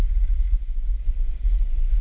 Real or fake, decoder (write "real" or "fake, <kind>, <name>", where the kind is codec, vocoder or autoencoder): real